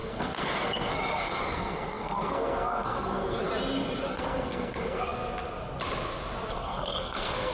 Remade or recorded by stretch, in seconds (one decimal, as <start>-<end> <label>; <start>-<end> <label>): 0.0-3.5 remade; 3.5-4.1 recorded; 4.1-5.2 remade; 5.2-6.5 recorded; 6.5-7.5 remade